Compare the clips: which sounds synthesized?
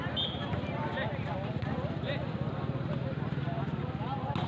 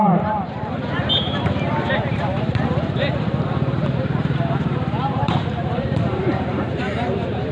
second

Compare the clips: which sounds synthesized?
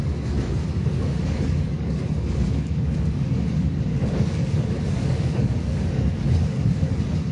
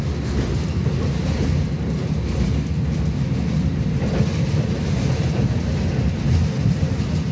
first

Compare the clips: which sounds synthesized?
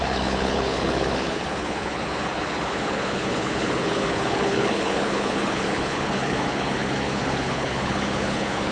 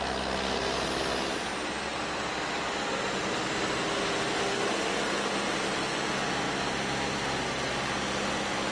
first